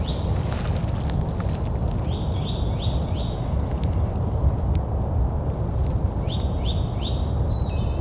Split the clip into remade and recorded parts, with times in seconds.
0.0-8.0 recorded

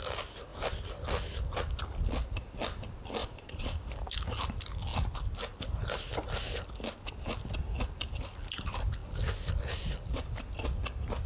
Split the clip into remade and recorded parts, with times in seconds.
0.0-3.2 recorded; 3.2-3.9 remade; 3.9-11.3 recorded

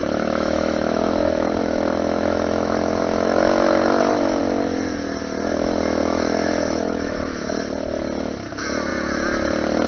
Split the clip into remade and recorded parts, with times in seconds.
0.0-4.4 remade; 4.4-6.0 recorded; 6.0-7.5 remade; 7.5-9.9 recorded

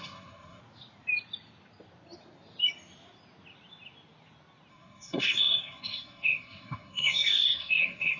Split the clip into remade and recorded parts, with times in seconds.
0.0-0.6 remade; 0.6-4.7 recorded; 4.7-8.2 remade

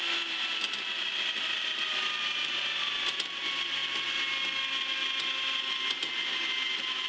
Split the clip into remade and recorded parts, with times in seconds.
0.0-7.1 recorded

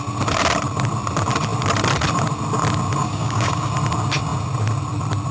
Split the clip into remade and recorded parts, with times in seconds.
0.0-3.0 recorded; 3.0-3.7 remade; 3.7-5.3 recorded

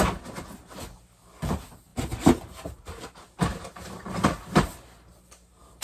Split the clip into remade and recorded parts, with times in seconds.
0.0-5.8 recorded